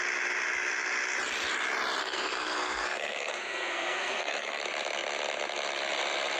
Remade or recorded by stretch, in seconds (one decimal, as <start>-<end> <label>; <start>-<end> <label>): 0.0-2.0 recorded; 2.0-4.6 remade; 4.6-6.4 recorded